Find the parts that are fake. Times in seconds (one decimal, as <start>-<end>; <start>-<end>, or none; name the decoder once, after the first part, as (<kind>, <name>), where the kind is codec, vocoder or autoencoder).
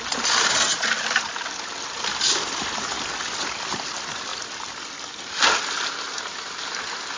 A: none